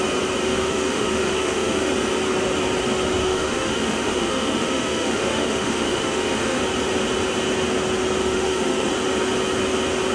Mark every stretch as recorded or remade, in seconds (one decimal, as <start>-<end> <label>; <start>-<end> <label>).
0.0-0.4 recorded; 0.4-1.9 remade; 1.9-3.2 recorded; 3.2-6.6 remade; 6.6-8.2 recorded; 8.2-8.9 remade; 8.9-10.1 recorded